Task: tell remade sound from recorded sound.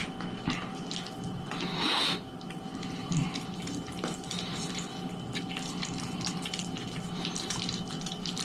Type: recorded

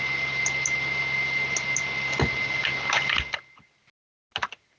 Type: recorded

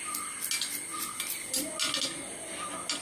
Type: recorded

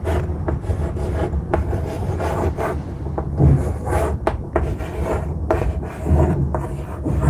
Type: recorded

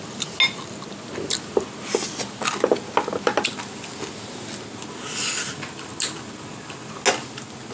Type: recorded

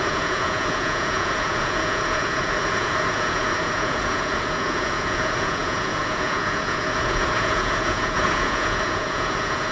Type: remade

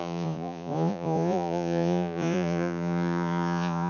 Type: remade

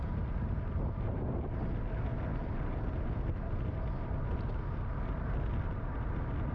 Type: recorded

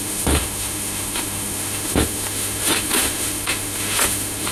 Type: remade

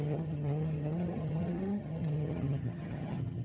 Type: remade